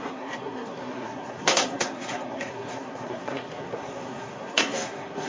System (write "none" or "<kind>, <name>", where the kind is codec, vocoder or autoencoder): codec, SNAC